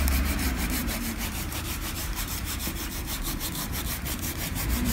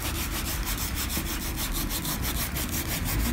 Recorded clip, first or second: second